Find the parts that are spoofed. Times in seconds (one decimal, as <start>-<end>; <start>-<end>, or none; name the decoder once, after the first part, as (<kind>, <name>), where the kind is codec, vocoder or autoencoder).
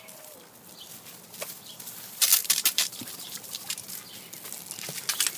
2.4-3.0 (vocoder, BigVGAN v2)